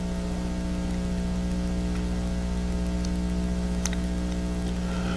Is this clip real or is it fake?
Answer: real